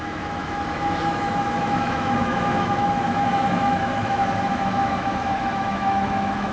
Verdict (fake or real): fake